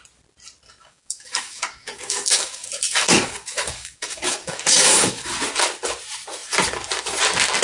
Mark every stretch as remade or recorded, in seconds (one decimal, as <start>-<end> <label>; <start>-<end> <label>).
0.0-0.8 recorded; 0.8-5.3 remade; 5.3-7.6 recorded